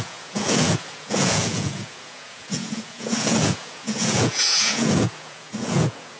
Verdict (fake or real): fake